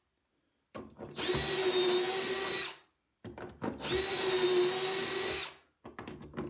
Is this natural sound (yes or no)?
yes